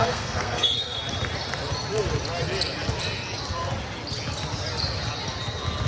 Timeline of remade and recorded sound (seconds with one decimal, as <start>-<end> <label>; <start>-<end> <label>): 0.0-1.0 remade; 1.0-5.9 recorded